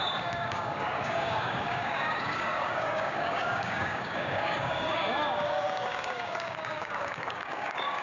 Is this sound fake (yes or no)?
yes